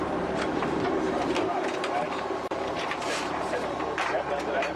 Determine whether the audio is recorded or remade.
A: remade